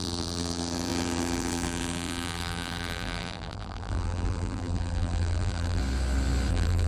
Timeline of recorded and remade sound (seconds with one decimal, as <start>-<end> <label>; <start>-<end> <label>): 0.0-5.8 remade; 5.8-6.5 recorded; 6.5-6.9 remade